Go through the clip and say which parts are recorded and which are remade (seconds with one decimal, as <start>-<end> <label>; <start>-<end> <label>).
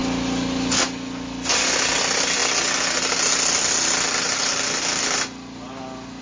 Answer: 0.0-6.2 recorded